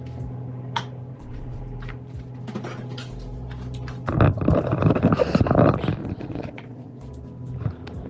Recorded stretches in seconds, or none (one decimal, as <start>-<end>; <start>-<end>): 0.0-1.1; 1.6-6.0; 7.1-8.1